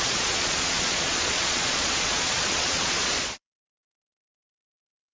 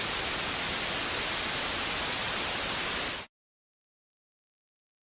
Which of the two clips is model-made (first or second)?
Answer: first